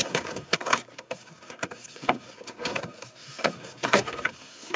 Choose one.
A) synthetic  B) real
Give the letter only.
A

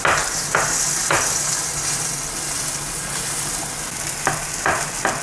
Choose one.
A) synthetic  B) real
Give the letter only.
B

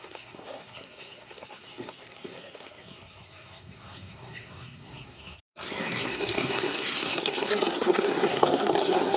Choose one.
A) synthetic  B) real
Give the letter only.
A